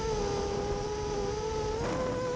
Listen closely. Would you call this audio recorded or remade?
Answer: recorded